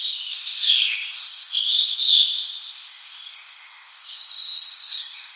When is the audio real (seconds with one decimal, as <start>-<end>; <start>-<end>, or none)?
none